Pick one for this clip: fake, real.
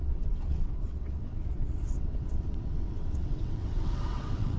fake